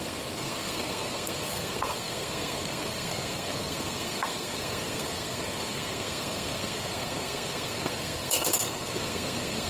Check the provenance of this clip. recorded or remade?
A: remade